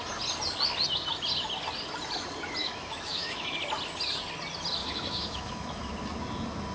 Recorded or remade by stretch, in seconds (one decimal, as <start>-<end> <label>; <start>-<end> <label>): 0.0-2.6 recorded; 2.6-3.6 remade; 3.6-4.8 recorded; 4.8-5.9 remade; 5.9-6.7 recorded